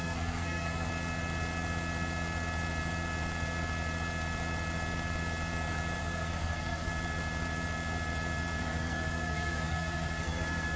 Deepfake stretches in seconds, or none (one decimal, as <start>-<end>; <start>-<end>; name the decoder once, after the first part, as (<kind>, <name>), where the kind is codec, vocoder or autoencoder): 0.0-0.9 (codec, SNAC); 6.0-6.9; 8.6-10.8